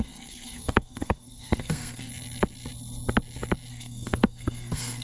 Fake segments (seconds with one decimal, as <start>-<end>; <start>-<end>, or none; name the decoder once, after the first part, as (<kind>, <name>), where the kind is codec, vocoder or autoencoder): 0.0-2.1 (codec, SNAC); 3.7-5.0